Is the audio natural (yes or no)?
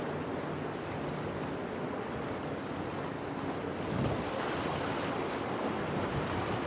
yes